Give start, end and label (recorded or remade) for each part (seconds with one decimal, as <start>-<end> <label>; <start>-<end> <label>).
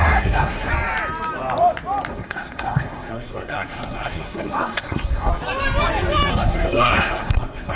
0.0-0.7 remade; 0.7-2.1 recorded; 2.1-5.3 remade; 5.3-6.3 recorded; 6.3-7.8 remade